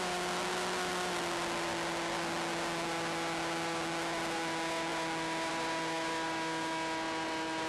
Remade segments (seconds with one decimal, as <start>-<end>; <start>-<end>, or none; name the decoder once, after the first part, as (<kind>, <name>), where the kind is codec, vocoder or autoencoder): none